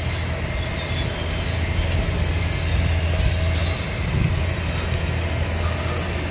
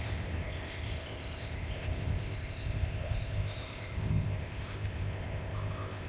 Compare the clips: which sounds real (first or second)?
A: first